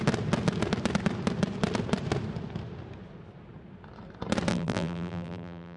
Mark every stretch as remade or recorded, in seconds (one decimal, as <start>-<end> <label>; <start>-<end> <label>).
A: 0.0-4.5 recorded; 4.5-5.8 remade